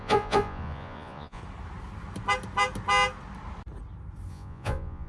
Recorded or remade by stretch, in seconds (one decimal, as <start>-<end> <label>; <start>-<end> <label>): 0.0-1.4 remade; 1.4-4.3 recorded; 4.3-5.1 remade